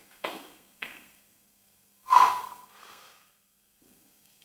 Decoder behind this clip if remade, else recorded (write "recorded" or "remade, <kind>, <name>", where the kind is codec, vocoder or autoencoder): remade, codec, SNAC